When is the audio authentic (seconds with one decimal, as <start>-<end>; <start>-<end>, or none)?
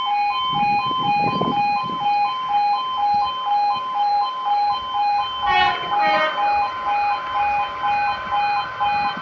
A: 0.0-4.1; 6.0-9.2